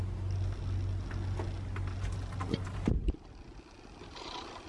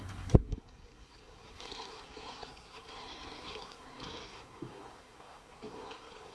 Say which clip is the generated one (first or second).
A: second